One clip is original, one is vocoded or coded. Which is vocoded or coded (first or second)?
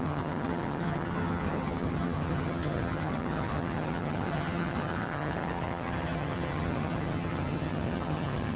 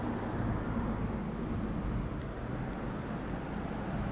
first